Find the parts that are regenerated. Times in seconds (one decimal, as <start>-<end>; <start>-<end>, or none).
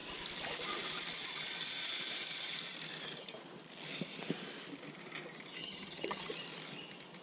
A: 5.6-6.3